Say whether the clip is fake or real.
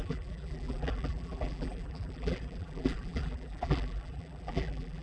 fake